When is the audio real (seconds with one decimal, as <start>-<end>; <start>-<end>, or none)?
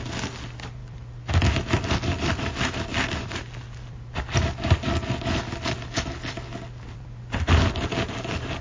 0.0-8.6